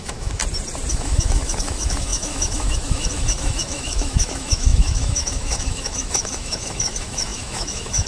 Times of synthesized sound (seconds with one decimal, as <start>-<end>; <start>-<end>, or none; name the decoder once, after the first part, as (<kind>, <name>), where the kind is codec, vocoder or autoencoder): 0.0-0.4 (autoencoder, DAC-VAE); 0.9-8.1